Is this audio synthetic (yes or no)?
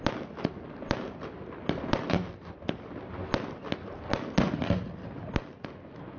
no